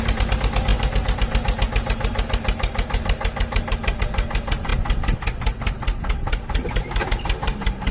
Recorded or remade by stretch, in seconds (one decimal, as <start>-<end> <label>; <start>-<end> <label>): 0.0-7.9 recorded